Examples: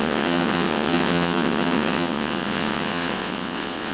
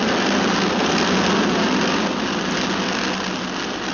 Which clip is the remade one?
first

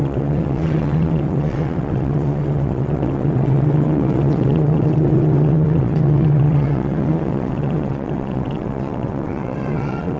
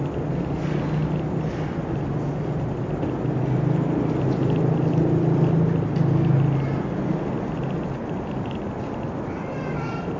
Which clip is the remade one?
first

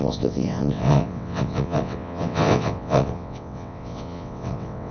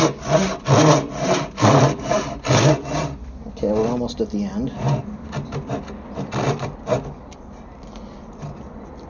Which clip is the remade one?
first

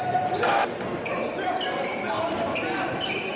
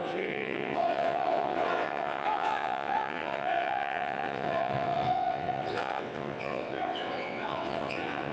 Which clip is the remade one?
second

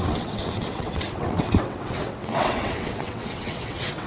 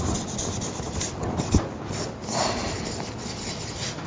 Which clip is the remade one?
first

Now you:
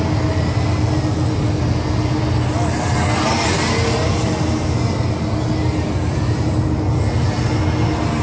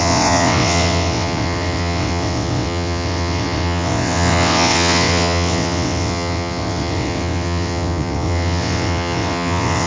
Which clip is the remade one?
second